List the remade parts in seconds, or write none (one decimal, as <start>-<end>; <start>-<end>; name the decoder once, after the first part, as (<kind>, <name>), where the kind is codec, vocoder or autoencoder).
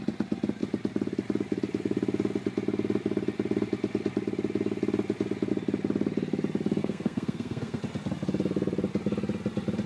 6.8-7.8 (codec, SNAC)